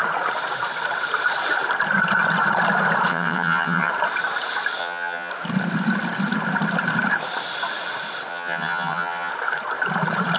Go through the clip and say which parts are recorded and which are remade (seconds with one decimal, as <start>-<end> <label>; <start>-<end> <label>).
0.0-3.1 recorded; 3.1-3.9 remade; 3.9-4.8 recorded; 4.8-5.3 remade; 5.3-8.3 recorded; 8.3-9.3 remade; 9.3-10.4 recorded

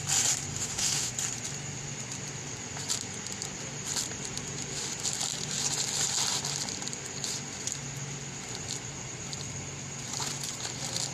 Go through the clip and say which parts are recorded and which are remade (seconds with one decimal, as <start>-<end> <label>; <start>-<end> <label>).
0.0-0.5 recorded; 0.5-1.1 remade; 1.1-11.1 recorded

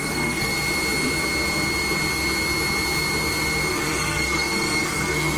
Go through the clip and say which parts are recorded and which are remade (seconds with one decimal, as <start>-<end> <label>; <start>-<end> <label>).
0.0-0.5 remade; 0.5-3.7 recorded; 3.7-5.4 remade

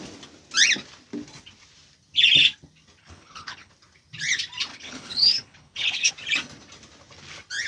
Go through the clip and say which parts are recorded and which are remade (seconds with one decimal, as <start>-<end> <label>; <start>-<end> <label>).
0.0-3.0 recorded; 3.0-3.7 remade; 3.7-4.7 recorded; 4.7-6.1 remade; 6.1-7.7 recorded

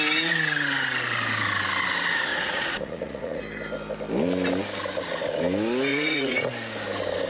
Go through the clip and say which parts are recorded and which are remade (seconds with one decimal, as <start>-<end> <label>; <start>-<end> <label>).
0.0-2.3 recorded; 2.3-3.4 remade; 3.4-5.9 recorded; 5.9-6.5 remade; 6.5-7.3 recorded

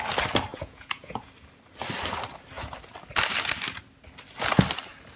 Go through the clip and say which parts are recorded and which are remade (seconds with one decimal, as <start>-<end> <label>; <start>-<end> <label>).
0.0-0.5 recorded; 0.5-1.3 remade; 1.3-5.2 recorded